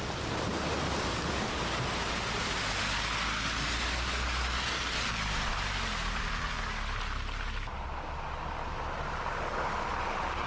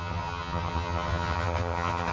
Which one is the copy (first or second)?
second